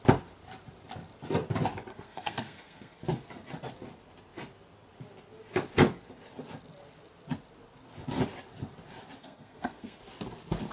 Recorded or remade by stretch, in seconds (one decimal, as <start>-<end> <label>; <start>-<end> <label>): 0.0-1.9 recorded; 1.9-3.0 remade; 3.0-9.2 recorded; 9.2-10.0 remade; 10.0-10.7 recorded